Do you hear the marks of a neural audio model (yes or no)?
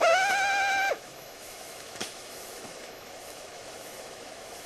yes